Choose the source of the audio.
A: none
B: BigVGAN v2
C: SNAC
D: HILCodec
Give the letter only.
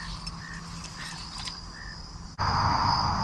A